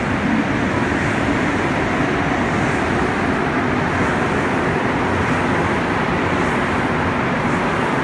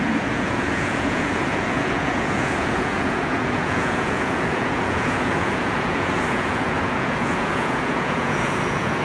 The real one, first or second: first